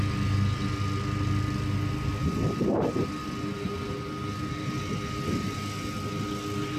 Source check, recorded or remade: recorded